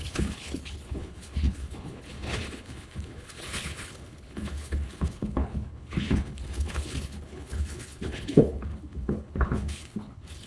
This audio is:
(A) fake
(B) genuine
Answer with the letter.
A